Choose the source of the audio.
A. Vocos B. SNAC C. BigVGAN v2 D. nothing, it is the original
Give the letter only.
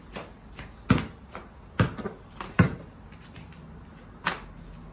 D